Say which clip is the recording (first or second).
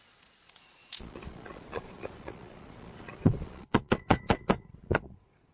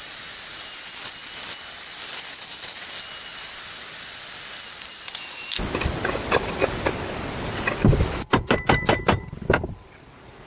second